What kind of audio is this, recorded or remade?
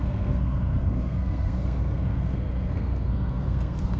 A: remade